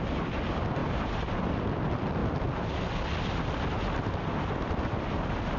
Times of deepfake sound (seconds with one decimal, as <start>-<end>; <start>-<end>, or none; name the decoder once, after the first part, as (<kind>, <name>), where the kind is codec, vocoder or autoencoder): 0.8-1.4 (vocoder, BigVGAN v2)